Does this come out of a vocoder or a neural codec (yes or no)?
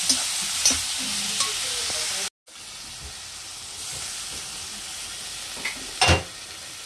no